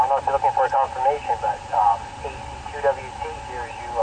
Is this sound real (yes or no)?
yes